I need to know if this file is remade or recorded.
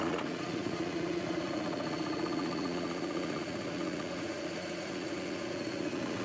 remade